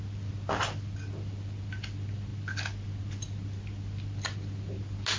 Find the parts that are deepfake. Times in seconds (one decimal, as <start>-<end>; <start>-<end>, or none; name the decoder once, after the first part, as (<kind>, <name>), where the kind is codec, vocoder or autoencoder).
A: none